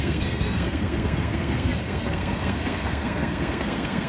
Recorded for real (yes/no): no